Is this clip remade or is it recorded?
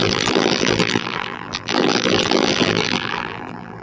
remade